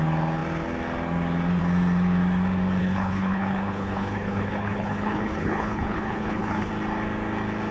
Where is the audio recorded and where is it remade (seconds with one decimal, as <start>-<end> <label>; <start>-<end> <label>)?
0.0-2.8 recorded; 2.8-6.7 remade; 6.7-7.7 recorded